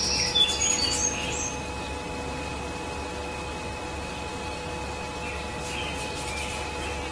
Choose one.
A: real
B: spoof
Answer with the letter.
A